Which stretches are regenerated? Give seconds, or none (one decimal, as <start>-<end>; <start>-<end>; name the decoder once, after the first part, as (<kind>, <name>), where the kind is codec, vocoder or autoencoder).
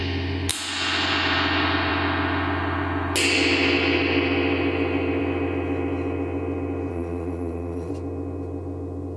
6.9-7.9 (vocoder, Vocos)